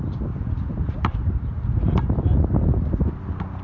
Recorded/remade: recorded